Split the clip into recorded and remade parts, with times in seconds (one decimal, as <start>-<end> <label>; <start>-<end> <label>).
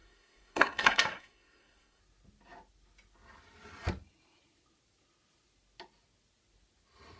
0.0-2.0 remade; 2.0-7.2 recorded